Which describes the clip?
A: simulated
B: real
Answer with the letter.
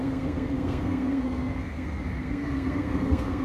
A